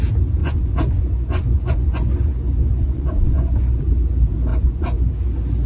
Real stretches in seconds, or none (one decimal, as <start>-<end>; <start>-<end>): 0.0-0.4; 3.8-4.5; 5.1-5.7

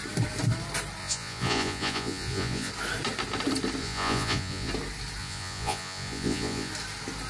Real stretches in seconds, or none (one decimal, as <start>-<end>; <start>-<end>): 0.0-1.0; 2.7-3.8; 4.7-5.2; 6.7-7.3

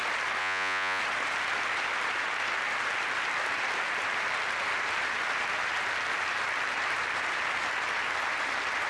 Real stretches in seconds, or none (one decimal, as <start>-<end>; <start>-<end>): 0.0-0.4; 1.0-8.9

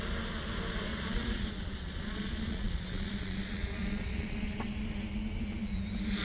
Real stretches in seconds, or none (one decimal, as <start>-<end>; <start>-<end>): 0.0-0.9; 4.6-6.2

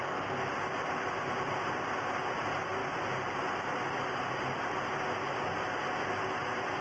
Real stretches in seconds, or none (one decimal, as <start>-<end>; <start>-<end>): 0.0-6.8

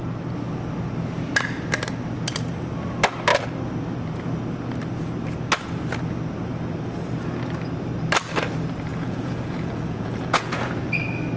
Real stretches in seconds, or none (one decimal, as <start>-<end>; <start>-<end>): 0.0-8.9; 10.7-11.4

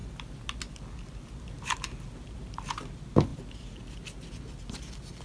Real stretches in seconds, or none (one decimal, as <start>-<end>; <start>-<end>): 0.0-5.2

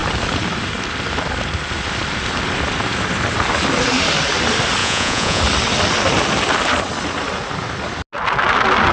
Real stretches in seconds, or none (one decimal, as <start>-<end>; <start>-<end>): 0.0-4.8; 5.4-8.9